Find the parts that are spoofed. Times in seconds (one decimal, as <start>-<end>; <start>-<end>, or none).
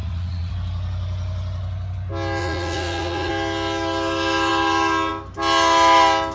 0.0-0.5; 2.4-3.3